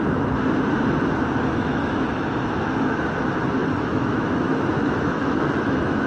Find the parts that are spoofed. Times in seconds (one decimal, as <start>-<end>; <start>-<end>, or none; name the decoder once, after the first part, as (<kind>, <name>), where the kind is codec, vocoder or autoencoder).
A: 1.5-3.0 (autoencoder, DAC-VAE); 3.6-6.1